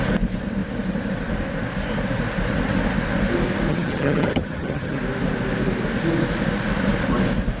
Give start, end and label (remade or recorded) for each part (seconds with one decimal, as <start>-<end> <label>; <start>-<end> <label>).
0.0-3.7 recorded; 3.7-5.0 remade; 5.0-7.6 recorded